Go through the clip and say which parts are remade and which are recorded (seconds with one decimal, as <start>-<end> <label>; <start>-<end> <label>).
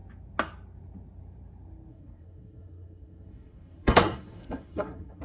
0.0-1.9 recorded; 1.9-5.2 remade